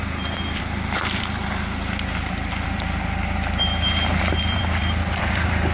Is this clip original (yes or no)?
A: no